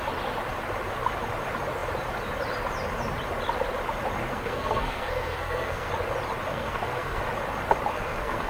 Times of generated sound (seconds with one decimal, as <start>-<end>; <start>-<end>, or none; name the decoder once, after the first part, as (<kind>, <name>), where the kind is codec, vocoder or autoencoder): 4.3-5.9 (codec, SNAC); 6.5-7.2; 7.9-8.5